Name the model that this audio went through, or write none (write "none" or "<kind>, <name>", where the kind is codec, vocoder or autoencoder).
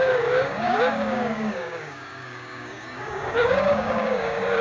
codec, DAC